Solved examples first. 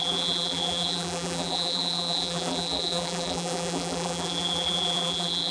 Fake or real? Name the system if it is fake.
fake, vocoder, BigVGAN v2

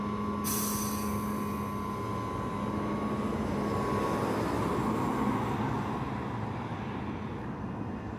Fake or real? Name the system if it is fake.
real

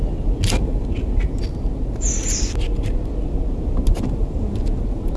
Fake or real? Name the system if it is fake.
real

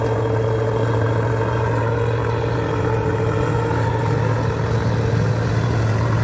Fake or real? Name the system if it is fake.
real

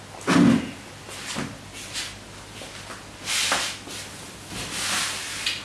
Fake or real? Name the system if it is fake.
real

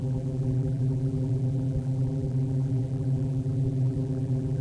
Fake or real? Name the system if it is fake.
fake, vocoder, BigVGAN v2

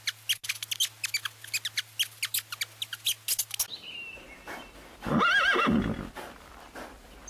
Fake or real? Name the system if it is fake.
real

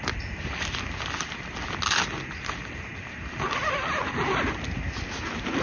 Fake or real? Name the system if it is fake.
real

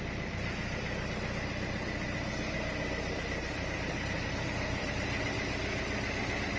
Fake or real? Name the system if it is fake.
fake, vocoder, BigVGAN v2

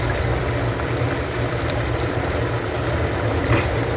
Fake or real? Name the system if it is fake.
fake, vocoder, BigVGAN v2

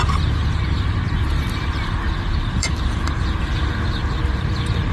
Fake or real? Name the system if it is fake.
fake, vocoder, BigVGAN v2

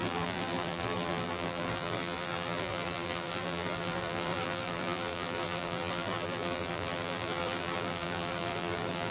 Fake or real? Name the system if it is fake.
fake, vocoder, BigVGAN v2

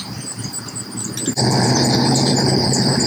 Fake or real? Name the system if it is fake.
fake, vocoder, BigVGAN v2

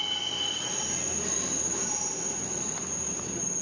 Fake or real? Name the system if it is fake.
real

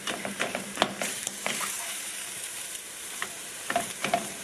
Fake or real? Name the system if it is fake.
fake, vocoder, BigVGAN v2